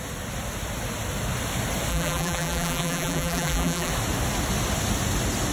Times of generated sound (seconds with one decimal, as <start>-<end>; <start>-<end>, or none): 1.9-3.9